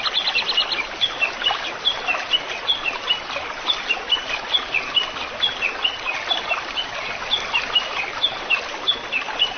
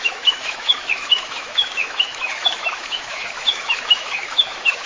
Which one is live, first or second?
first